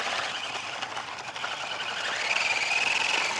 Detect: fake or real real